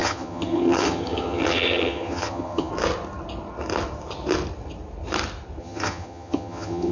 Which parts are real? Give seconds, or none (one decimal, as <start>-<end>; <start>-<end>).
2.7-5.6